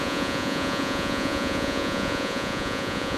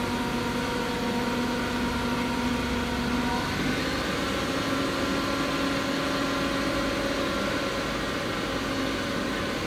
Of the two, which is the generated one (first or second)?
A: first